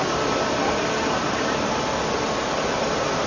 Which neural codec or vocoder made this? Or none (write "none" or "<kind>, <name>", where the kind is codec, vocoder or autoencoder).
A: none